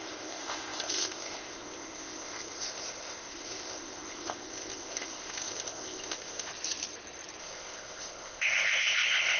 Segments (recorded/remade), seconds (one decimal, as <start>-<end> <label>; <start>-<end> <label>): 0.0-6.5 remade; 6.5-7.4 recorded; 7.4-9.4 remade

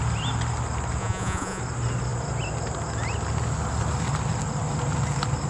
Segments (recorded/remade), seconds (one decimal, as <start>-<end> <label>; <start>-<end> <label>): 0.0-1.0 recorded; 1.0-1.6 remade; 1.6-5.5 recorded